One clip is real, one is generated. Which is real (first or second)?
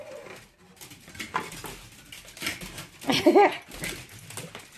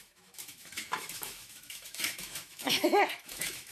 first